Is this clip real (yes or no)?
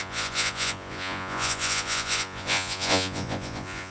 no